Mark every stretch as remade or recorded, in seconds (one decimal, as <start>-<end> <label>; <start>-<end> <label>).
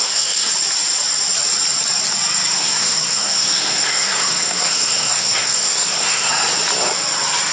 0.0-0.5 remade; 0.5-2.5 recorded; 2.5-6.3 remade; 6.3-7.5 recorded